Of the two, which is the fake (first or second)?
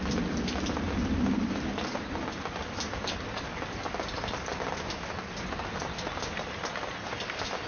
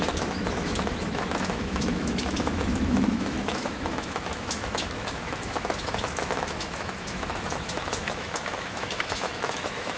second